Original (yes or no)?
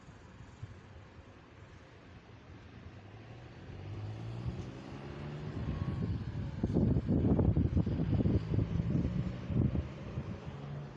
yes